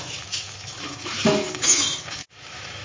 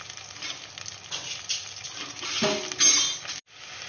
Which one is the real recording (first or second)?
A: second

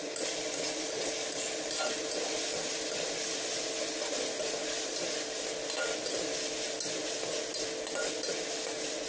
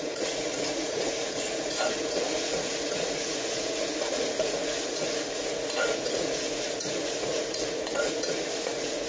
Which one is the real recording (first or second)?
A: first